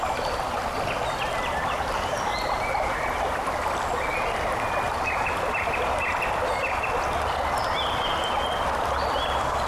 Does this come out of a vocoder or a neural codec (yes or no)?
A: no